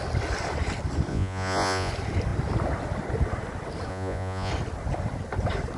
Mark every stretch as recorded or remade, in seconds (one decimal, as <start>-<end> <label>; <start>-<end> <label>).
0.0-1.1 recorded; 1.1-1.9 remade; 1.9-3.9 recorded; 3.9-4.5 remade; 4.5-5.8 recorded

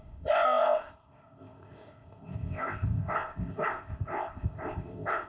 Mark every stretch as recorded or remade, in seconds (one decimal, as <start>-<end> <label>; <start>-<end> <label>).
0.0-5.3 remade

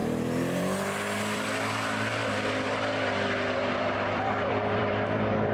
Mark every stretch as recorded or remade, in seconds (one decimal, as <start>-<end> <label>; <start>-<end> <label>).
0.0-2.2 remade; 2.2-3.7 recorded; 3.7-5.5 remade